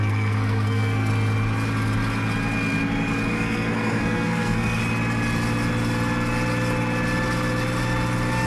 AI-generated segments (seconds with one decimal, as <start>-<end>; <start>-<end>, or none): 0.0-1.1; 3.3-4.8